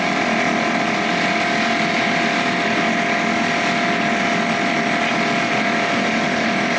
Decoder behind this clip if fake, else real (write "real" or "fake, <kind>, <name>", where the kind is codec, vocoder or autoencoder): real